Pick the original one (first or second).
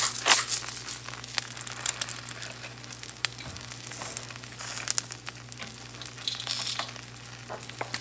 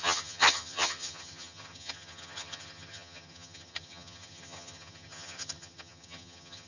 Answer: first